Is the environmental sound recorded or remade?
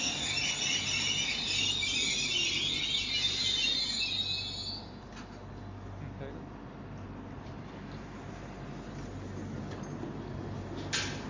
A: recorded